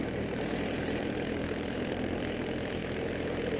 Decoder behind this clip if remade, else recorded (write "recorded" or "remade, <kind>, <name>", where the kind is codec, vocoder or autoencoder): remade, vocoder, BigVGAN v2